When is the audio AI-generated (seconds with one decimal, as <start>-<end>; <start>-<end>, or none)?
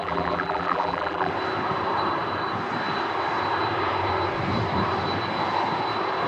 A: 0.0-1.3